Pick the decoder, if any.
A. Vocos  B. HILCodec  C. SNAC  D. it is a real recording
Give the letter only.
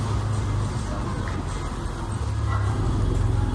D